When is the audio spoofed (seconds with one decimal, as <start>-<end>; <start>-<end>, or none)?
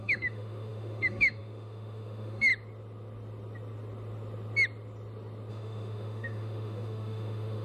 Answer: 0.0-2.5; 5.5-7.6